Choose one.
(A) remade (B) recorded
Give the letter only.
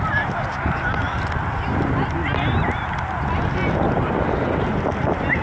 B